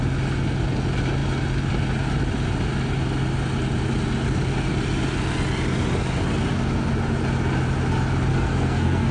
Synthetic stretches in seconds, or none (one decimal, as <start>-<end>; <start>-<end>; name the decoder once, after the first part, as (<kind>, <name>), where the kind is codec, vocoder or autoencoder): 8.3-9.1 (codec, SNAC)